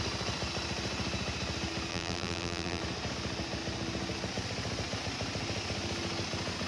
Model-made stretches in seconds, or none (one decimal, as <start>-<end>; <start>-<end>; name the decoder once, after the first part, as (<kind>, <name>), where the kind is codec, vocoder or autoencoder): 1.9-2.8 (vocoder, BigVGAN v2)